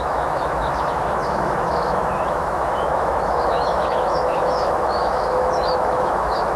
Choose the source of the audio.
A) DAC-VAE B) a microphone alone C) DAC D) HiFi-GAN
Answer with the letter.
A